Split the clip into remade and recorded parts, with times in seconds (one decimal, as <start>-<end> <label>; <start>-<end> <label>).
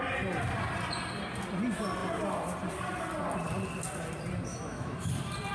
0.0-4.5 recorded; 4.5-5.1 remade; 5.1-5.5 recorded